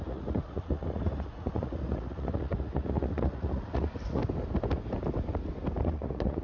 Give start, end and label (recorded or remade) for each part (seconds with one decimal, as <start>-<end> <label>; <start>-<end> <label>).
0.0-4.2 remade; 4.2-5.8 recorded; 5.8-6.4 remade